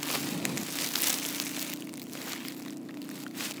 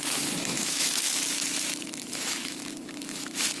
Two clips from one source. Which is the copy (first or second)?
second